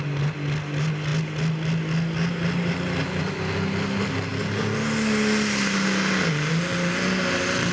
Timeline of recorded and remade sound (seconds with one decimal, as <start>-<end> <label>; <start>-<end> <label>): 0.0-7.7 recorded